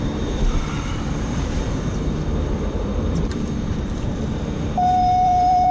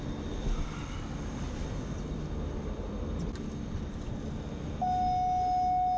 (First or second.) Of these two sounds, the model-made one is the first